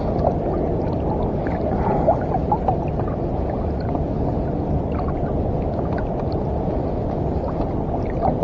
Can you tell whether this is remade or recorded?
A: recorded